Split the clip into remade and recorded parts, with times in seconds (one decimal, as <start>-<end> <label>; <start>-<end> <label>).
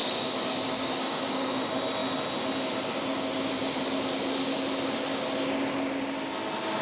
0.0-1.5 remade; 1.5-6.8 recorded